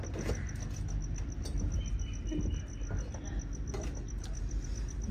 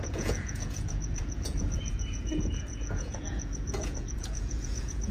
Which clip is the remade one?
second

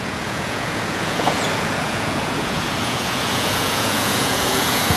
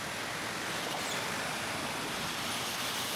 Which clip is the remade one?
first